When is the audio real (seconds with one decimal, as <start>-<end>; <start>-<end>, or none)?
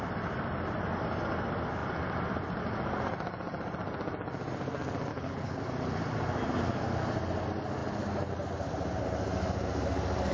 0.0-5.1; 5.6-10.3